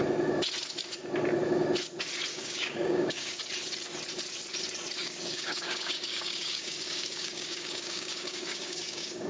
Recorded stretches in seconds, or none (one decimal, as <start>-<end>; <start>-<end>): 0.0-2.3; 3.4-5.0